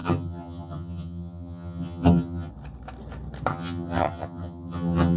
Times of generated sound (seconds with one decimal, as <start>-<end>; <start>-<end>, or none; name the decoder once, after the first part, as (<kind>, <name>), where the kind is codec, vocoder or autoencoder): 0.0-2.5 (vocoder, HiFi-GAN); 3.5-5.2